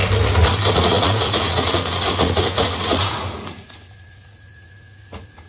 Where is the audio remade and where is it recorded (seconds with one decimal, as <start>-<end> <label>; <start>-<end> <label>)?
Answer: 0.0-0.7 recorded; 0.7-5.5 remade